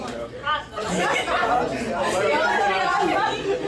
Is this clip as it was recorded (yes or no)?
yes